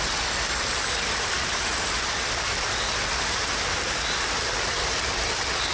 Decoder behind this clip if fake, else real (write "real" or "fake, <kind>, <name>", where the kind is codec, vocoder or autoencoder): real